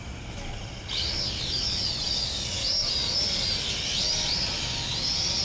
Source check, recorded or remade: recorded